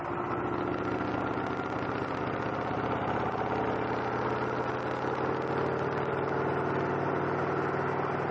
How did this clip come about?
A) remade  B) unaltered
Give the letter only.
B